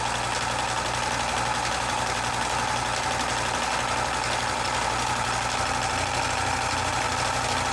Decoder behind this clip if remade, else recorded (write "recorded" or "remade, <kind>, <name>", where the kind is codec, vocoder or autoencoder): recorded